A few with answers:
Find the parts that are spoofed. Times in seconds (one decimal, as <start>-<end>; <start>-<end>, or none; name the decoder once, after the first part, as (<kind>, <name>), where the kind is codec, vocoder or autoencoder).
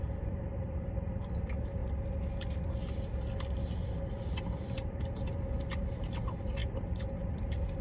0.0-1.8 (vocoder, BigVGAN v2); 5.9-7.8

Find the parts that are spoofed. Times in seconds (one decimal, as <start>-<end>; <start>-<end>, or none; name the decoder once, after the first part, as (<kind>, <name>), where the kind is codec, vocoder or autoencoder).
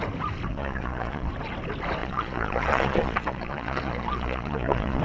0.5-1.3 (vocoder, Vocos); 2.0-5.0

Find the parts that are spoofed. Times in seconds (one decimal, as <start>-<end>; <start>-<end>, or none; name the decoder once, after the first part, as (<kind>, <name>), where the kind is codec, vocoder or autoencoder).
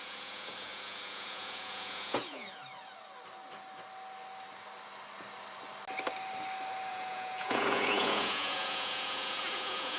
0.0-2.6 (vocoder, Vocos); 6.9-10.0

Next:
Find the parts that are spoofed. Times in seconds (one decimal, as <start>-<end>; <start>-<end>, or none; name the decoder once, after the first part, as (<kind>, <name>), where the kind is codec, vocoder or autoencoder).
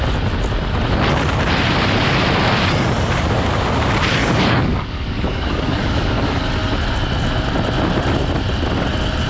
4.2-6.5 (codec, DAC)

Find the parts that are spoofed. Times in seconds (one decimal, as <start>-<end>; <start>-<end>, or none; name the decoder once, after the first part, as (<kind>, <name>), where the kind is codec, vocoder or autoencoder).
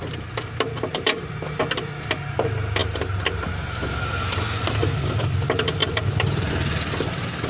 0.9-1.6 (vocoder, BigVGAN v2); 2.8-3.5; 5.8-6.5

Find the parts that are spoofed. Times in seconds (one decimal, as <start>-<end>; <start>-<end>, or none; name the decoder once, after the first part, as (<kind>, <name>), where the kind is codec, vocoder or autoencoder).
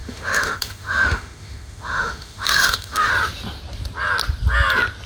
0.0-3.1 (autoencoder, DAC-VAE)